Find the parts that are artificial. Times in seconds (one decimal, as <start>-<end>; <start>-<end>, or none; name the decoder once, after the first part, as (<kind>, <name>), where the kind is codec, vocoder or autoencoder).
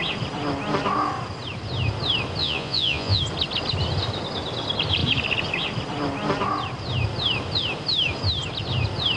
2.4-3.2 (vocoder, Vocos)